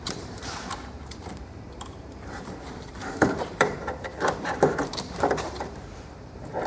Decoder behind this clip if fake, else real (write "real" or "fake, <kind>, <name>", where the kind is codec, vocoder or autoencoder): fake, vocoder, BigVGAN v2